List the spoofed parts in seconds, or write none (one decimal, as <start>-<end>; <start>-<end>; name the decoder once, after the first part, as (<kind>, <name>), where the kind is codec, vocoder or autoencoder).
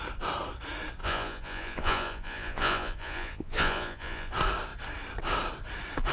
1.0-4.3 (vocoder, Vocos)